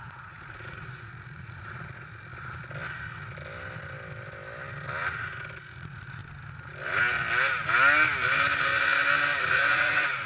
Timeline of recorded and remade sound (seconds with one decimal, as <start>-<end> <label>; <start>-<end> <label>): 0.0-2.3 remade; 2.3-5.6 recorded; 5.6-6.2 remade; 6.2-9.4 recorded; 9.4-10.3 remade